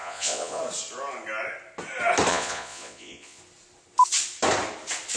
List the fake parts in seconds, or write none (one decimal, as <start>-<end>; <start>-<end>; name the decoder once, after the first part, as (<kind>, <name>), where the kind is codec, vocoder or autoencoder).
0.0-0.6 (vocoder, Vocos); 2.3-3.4

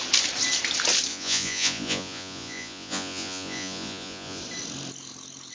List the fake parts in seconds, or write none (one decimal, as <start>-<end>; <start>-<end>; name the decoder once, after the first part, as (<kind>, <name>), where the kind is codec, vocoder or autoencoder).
1.1-4.4 (vocoder, Vocos)

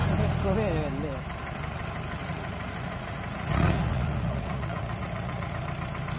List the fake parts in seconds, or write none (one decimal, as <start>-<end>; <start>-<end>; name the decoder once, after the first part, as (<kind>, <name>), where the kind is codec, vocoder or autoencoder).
2.2-5.5 (vocoder, Vocos)

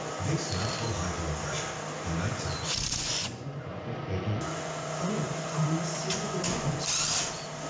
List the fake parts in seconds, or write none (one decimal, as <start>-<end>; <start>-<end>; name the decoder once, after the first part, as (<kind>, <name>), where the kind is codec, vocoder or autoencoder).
2.3-6.8 (vocoder, Vocos)

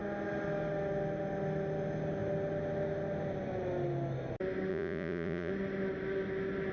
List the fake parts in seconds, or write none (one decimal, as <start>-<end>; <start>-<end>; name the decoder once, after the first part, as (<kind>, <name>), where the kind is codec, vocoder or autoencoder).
4.7-5.5 (vocoder, Vocos)

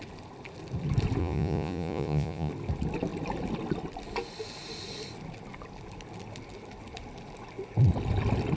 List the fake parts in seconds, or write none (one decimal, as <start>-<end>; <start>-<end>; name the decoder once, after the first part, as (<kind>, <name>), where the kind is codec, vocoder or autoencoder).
1.2-2.5 (vocoder, Vocos)

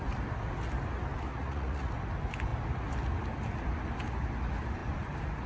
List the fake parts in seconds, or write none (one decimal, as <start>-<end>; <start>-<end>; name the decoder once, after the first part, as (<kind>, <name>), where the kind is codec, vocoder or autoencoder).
1.3-1.9 (vocoder, Vocos)